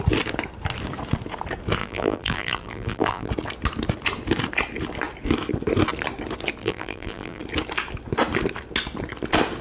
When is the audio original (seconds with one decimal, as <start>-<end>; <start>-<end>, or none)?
0.0-1.8; 3.3-6.6; 7.4-9.6